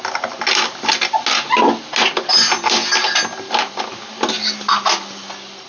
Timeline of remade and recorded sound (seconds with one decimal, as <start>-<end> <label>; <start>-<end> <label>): 0.0-5.7 recorded